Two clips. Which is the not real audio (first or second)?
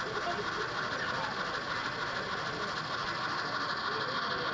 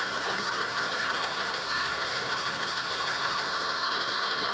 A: second